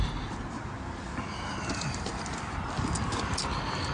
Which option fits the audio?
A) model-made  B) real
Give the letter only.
B